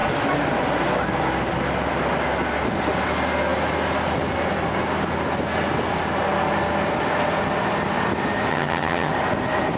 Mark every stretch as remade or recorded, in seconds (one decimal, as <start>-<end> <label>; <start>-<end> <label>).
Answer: 0.0-8.5 recorded; 8.5-9.1 remade; 9.1-9.8 recorded